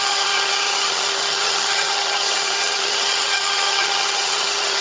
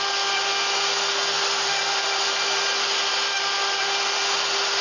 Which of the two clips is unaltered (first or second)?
second